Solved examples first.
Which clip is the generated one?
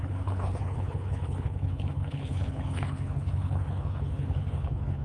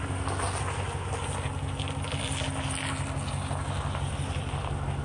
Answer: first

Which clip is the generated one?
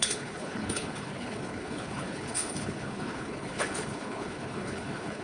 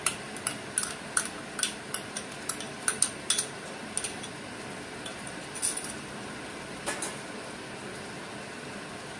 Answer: first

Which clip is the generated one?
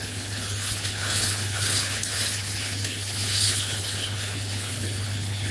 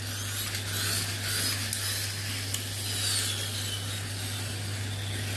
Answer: first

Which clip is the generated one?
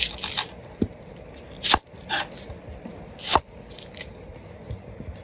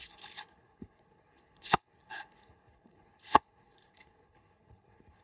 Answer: second